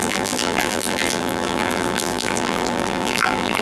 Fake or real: fake